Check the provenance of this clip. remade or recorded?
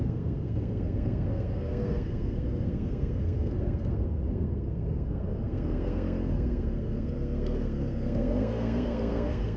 remade